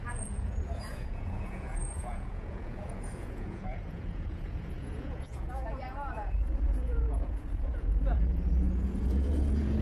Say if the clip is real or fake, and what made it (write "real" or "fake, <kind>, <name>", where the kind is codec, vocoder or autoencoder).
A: fake, vocoder, Vocos